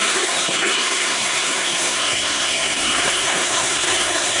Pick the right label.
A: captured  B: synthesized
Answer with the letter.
B